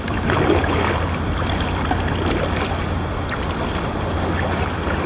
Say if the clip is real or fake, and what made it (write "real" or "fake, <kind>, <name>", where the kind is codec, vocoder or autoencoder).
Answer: real